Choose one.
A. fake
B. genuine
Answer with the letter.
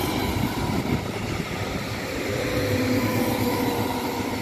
B